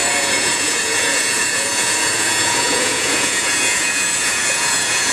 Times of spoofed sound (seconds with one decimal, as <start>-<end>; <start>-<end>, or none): 0.0-5.1